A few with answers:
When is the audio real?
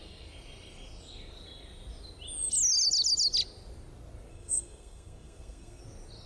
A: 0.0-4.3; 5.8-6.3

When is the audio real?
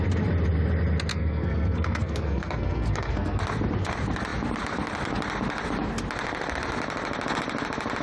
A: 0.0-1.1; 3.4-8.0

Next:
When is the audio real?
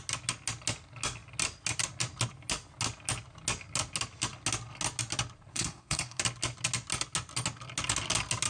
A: 0.0-5.5; 6.2-8.5